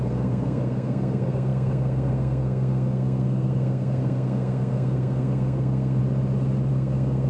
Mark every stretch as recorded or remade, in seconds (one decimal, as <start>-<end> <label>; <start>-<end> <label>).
0.0-6.0 remade; 6.0-6.7 recorded; 6.7-7.3 remade